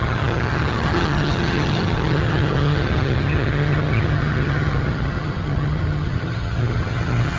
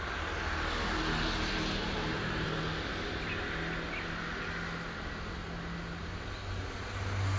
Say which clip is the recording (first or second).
second